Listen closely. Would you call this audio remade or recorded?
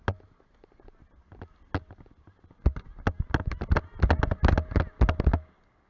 recorded